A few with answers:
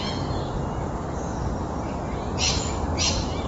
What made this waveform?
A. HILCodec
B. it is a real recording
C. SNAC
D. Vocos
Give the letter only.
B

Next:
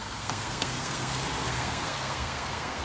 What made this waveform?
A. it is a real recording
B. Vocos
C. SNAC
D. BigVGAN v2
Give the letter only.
C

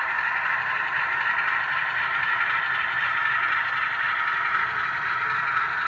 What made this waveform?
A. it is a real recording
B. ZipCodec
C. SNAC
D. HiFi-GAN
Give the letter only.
A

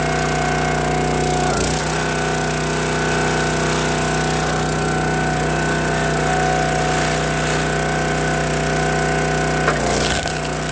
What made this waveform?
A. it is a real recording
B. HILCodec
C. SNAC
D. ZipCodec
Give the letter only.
A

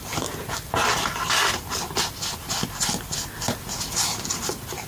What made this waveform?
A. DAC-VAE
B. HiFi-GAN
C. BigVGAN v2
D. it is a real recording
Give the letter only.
D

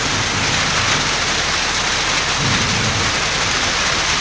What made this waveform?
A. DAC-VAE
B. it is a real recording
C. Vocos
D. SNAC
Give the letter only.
B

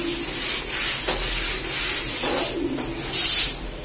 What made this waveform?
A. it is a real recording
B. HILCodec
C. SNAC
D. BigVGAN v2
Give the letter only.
A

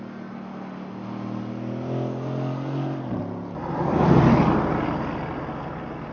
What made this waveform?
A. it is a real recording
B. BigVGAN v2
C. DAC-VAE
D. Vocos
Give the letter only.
A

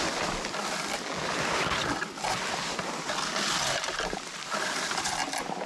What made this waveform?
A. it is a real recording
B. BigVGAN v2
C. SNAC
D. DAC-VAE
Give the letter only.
A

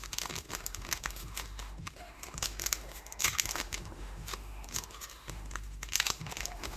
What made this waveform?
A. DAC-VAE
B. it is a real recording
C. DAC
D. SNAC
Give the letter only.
A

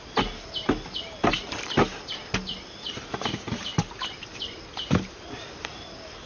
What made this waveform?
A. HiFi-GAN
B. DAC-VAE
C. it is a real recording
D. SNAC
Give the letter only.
C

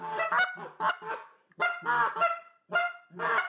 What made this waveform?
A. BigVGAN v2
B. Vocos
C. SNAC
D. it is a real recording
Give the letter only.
D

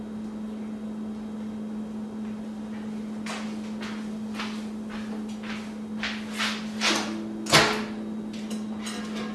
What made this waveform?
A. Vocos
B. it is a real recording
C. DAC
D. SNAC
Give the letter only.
B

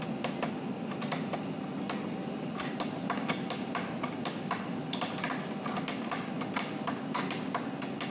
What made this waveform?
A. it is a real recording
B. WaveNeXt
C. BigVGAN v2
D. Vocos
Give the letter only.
A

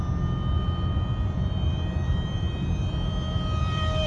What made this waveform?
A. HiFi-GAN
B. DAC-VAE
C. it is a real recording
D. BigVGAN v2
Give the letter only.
D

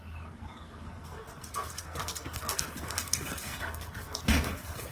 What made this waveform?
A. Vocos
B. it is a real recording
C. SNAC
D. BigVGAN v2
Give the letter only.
C